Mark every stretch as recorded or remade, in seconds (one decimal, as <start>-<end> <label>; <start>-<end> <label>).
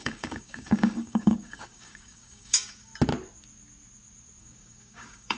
0.0-2.9 remade; 2.9-4.4 recorded; 4.4-5.4 remade